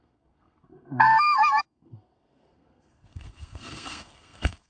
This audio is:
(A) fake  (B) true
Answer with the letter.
A